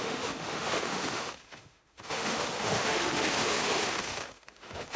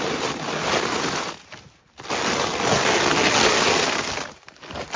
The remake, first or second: first